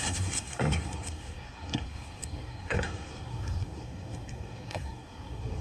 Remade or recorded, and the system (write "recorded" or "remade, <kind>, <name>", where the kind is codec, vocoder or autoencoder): remade, codec, SNAC